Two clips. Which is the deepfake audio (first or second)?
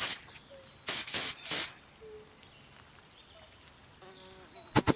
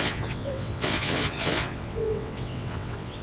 second